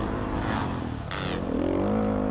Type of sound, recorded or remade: recorded